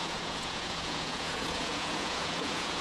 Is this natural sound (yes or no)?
no